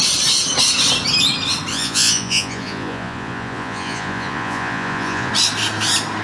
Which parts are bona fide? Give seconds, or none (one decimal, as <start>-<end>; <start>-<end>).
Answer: 0.0-1.7; 5.3-6.2